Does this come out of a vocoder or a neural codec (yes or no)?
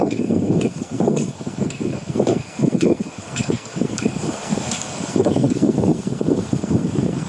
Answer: yes